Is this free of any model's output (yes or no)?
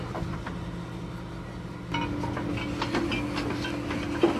yes